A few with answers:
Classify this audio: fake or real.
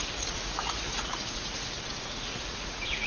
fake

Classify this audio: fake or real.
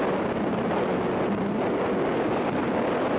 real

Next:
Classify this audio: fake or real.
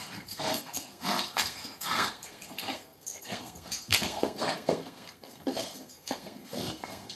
fake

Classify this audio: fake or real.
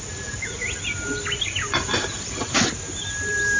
real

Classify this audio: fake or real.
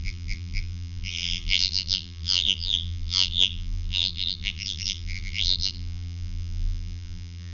fake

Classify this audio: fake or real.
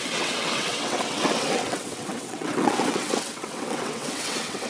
fake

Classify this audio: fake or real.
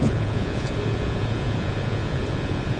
fake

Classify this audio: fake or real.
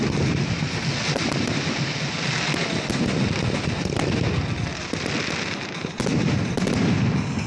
real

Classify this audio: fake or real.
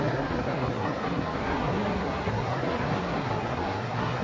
fake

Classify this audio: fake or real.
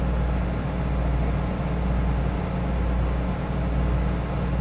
real